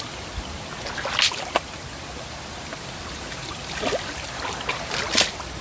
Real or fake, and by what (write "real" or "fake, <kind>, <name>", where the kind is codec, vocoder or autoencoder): real